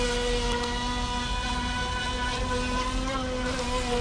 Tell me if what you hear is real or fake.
real